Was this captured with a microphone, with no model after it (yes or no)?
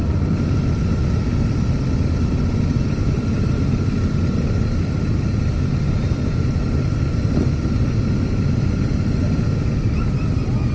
yes